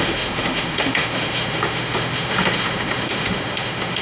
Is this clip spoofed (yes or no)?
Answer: yes